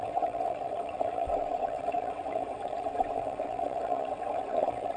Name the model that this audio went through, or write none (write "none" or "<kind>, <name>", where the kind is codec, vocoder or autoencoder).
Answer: vocoder, WaveNeXt